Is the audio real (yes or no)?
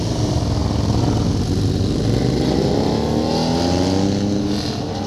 yes